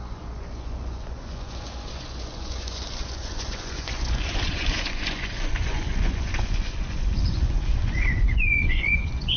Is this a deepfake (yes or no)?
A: yes